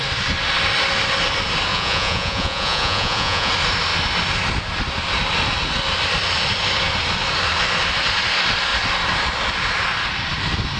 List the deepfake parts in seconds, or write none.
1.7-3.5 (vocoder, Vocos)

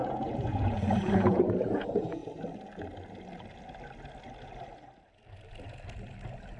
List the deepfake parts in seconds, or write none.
0.0-2.2 (vocoder, Vocos)

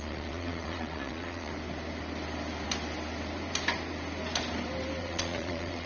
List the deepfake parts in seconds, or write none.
0.0-1.5 (vocoder, Vocos); 5.0-5.9

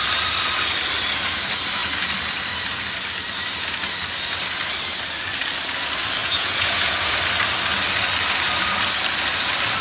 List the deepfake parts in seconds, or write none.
6.2-7.1 (vocoder, Vocos)

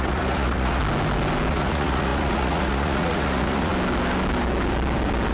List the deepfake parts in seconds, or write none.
0.0-0.8 (vocoder, Vocos); 1.5-3.7